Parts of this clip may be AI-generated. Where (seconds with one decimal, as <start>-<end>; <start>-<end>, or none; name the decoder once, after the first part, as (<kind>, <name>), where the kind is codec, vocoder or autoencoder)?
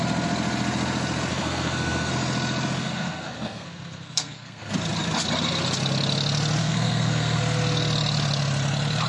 1.3-2.1 (codec, SNAC); 2.8-4.7; 6.6-7.4